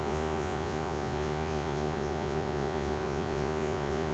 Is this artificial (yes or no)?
yes